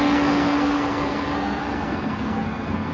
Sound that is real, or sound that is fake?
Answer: fake